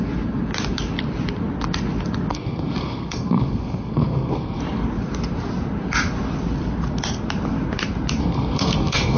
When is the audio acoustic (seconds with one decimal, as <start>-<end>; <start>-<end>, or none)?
0.0-2.3; 4.6-8.2

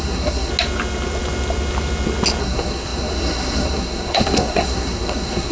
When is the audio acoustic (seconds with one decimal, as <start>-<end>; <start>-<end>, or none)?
0.5-2.4

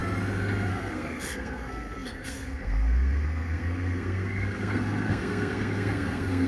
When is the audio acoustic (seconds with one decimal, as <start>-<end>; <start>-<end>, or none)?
0.0-0.7

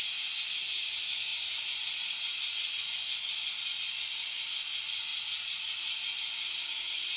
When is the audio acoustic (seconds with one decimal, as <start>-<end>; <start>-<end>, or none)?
0.0-7.2

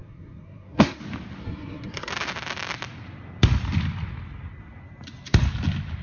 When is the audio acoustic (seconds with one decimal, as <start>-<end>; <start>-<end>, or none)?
1.0-1.4; 2.1-6.0

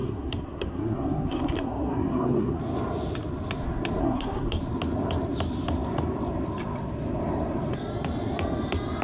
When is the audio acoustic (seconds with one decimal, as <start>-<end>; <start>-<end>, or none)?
2.6-4.0; 4.6-9.0

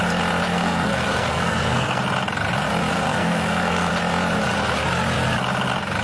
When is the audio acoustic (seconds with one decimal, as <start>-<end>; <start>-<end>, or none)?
0.0-0.5; 2.0-3.1; 3.9-6.0